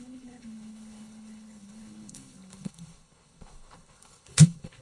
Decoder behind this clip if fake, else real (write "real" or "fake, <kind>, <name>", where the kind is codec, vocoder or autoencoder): fake, codec, HILCodec